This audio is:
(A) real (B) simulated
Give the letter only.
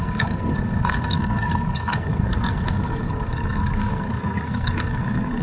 B